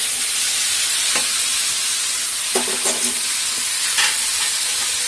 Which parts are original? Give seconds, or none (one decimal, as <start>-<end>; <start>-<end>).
0.0-5.1